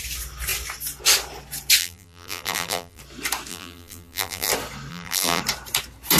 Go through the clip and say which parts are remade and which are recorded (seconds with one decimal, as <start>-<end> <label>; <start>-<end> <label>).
0.0-1.8 recorded; 1.8-3.0 remade; 3.0-3.5 recorded; 3.5-4.5 remade; 4.5-4.9 recorded; 4.9-5.4 remade; 5.4-6.2 recorded